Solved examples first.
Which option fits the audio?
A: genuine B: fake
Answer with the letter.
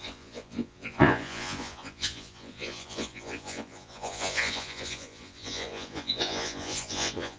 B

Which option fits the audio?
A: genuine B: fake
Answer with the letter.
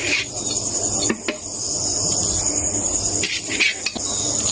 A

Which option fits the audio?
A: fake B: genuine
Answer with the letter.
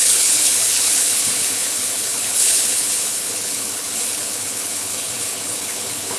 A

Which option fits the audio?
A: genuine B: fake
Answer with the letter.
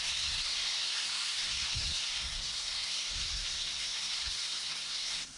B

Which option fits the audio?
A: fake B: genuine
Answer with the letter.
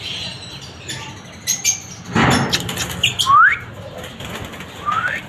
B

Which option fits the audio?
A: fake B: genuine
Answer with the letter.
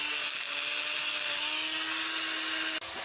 B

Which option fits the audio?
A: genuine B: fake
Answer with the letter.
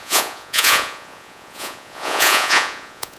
B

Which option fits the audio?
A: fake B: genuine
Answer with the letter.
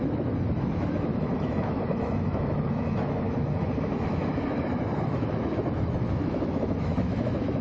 A